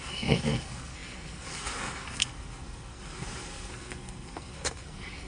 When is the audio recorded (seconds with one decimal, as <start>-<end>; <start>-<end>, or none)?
none